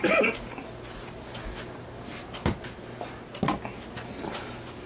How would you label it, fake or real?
real